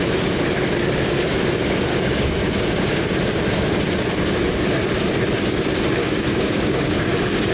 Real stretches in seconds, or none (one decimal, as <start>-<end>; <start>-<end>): 0.0-1.9; 2.9-6.0